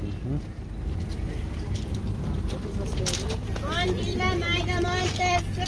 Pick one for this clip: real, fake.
real